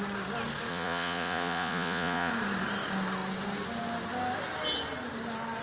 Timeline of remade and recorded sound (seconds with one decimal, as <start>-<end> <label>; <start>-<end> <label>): 0.0-0.7 recorded; 0.7-2.3 remade; 2.3-5.6 recorded

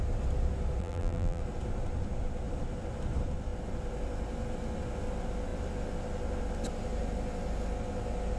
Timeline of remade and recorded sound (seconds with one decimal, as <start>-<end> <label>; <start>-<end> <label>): 0.0-0.8 recorded; 0.8-1.4 remade; 1.4-8.4 recorded